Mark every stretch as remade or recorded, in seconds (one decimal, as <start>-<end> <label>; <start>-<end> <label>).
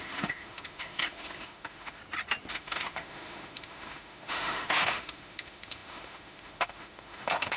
0.0-2.0 remade; 2.0-2.5 recorded; 2.5-7.6 remade